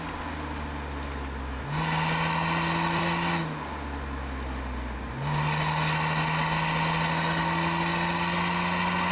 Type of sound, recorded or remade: recorded